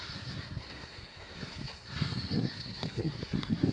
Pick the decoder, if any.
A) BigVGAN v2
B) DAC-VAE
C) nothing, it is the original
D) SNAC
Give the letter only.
D